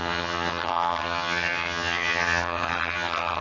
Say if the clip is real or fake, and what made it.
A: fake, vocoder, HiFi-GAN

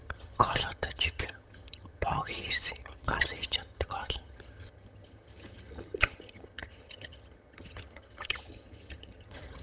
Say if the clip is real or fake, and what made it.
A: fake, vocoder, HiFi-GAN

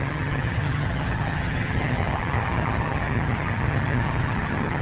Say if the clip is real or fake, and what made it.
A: fake, vocoder, HiFi-GAN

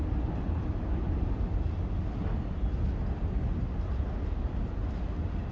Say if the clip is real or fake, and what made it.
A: real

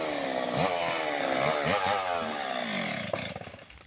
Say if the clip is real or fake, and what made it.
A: real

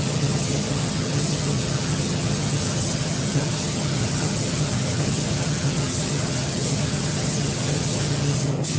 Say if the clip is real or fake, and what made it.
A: fake, vocoder, HiFi-GAN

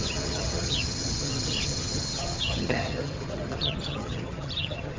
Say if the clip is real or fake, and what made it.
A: fake, vocoder, HiFi-GAN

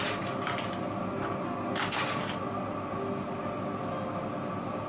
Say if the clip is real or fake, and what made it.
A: real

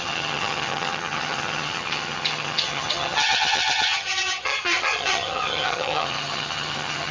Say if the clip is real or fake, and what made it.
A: fake, vocoder, HiFi-GAN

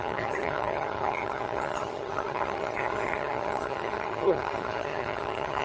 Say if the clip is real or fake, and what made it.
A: fake, vocoder, HiFi-GAN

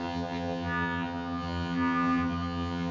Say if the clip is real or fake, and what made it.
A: fake, vocoder, HiFi-GAN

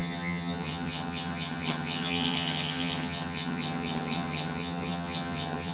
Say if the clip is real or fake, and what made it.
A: fake, vocoder, HiFi-GAN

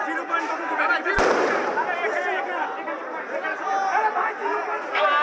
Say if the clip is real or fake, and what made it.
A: real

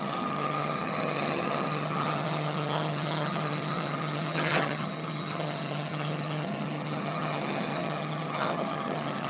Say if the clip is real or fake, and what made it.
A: fake, vocoder, HiFi-GAN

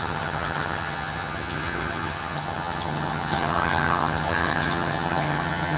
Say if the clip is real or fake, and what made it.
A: fake, vocoder, HiFi-GAN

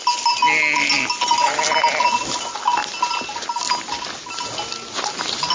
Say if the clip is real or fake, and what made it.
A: real